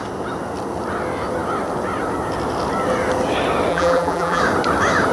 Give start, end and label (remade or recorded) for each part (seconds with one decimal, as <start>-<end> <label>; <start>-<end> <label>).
0.0-3.7 recorded; 3.7-4.4 remade; 4.4-5.1 recorded